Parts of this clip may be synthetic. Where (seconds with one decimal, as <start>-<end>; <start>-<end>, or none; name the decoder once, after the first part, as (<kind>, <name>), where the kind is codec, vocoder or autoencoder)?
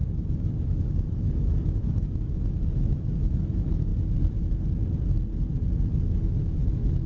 0.0-3.9 (autoencoder, DAC-VAE); 6.0-7.1